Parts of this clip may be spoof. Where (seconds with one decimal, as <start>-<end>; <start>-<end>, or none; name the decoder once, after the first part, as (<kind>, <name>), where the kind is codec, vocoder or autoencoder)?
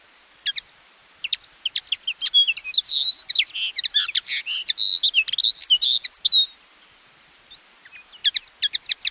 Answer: none